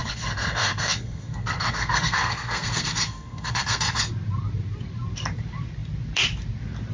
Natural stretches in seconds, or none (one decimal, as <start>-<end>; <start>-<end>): 4.1-6.9